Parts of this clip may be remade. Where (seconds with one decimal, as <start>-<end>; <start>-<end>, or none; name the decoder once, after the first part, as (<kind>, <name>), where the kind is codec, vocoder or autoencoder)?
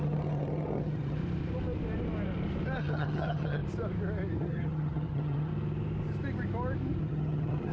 0.0-1.2 (vocoder, HiFi-GAN); 2.8-3.6; 4.4-5.5; 7.0-7.7